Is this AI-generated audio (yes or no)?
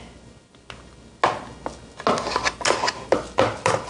no